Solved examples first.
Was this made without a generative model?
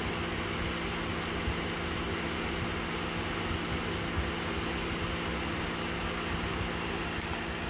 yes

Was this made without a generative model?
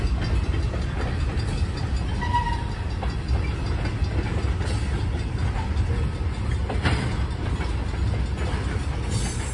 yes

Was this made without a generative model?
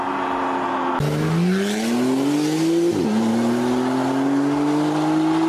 yes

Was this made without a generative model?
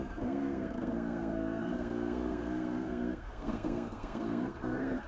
no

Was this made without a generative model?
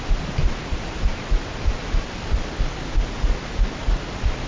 yes